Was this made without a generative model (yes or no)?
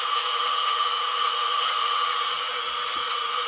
no